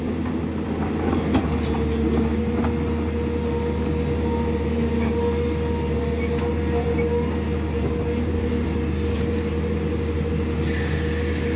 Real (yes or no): yes